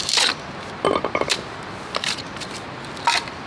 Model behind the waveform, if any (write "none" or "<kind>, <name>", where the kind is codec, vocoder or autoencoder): none